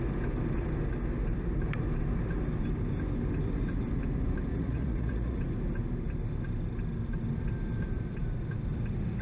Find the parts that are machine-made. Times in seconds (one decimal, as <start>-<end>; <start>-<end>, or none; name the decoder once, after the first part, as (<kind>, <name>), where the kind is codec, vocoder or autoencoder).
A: 4.5-5.4 (vocoder, Vocos)